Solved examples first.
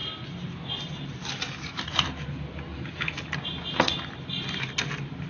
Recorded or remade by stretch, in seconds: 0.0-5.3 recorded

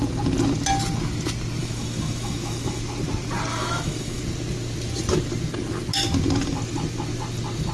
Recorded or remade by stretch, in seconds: 0.0-1.6 recorded; 1.6-2.8 remade; 2.8-3.5 recorded; 3.5-4.2 remade; 4.2-7.7 recorded

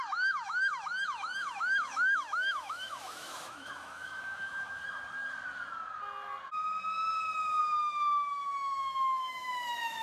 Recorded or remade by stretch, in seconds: 0.0-4.8 remade; 4.8-7.6 recorded; 7.6-10.0 remade

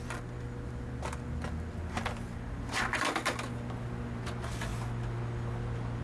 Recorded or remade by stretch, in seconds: 0.0-6.0 recorded

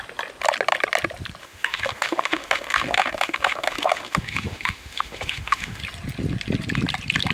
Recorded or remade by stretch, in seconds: 0.0-1.4 recorded; 1.4-5.8 remade; 5.8-7.3 recorded

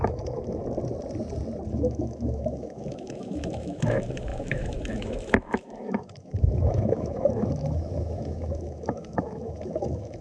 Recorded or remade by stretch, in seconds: 0.0-0.6 remade; 0.6-1.7 recorded; 1.7-10.2 remade

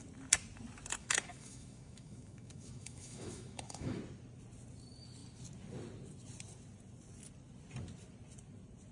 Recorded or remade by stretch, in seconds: 0.0-1.0 recorded; 1.0-4.0 remade; 4.0-8.9 recorded

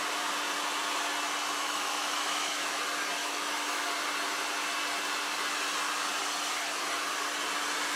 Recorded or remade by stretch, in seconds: 0.0-1.6 recorded; 1.6-2.8 remade; 2.8-3.2 recorded; 3.2-3.9 remade; 3.9-8.0 recorded